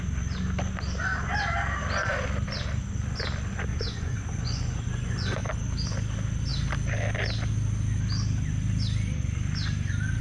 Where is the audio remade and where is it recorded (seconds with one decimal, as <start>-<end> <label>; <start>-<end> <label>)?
0.0-3.7 recorded; 3.7-5.4 remade; 5.4-10.2 recorded

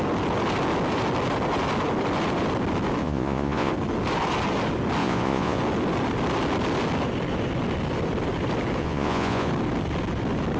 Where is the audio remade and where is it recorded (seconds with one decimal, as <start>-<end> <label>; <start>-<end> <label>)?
0.0-3.0 recorded; 3.0-3.7 remade; 3.7-5.0 recorded; 5.0-5.6 remade; 5.6-8.8 recorded; 8.8-9.5 remade; 9.5-10.6 recorded

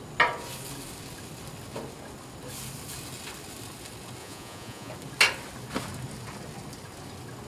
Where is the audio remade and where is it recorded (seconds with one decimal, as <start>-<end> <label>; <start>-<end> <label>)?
0.0-4.2 recorded; 4.2-4.9 remade; 4.9-7.5 recorded

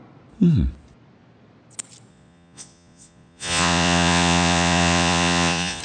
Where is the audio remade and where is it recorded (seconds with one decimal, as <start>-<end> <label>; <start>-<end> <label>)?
0.0-2.1 recorded; 2.1-5.8 remade

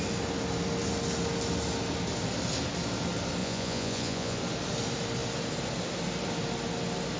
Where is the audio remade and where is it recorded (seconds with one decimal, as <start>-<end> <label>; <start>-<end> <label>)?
0.0-3.4 recorded; 3.4-4.4 remade; 4.4-7.2 recorded

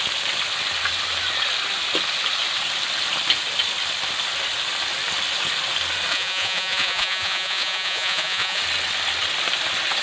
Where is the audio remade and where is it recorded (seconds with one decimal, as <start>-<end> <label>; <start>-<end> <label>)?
0.0-6.1 recorded; 6.1-8.6 remade; 8.6-10.0 recorded

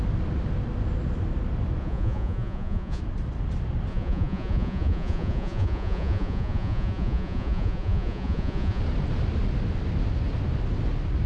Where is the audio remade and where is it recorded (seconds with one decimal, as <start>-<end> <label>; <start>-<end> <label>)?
0.0-1.8 recorded; 1.8-3.0 remade; 3.0-3.9 recorded; 3.9-8.8 remade; 8.8-11.3 recorded

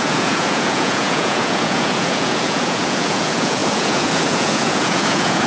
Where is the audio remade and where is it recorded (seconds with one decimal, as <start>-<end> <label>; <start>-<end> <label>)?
0.0-5.5 remade